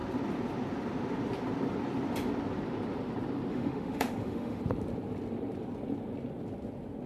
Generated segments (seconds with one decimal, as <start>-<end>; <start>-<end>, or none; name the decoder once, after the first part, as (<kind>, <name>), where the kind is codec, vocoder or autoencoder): 3.5-4.6 (autoencoder, DAC-VAE)